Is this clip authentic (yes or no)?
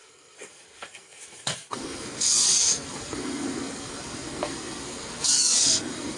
no